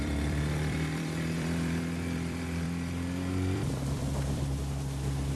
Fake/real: fake